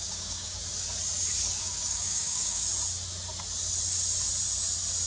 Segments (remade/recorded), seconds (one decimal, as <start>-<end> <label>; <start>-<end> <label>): 0.0-0.6 remade; 0.6-1.6 recorded; 1.6-2.7 remade; 2.7-5.1 recorded